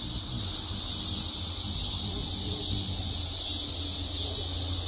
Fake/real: real